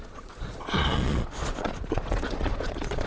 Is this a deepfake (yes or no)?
yes